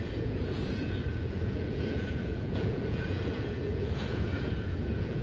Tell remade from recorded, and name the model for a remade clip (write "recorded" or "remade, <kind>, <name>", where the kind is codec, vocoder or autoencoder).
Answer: remade, vocoder, Vocos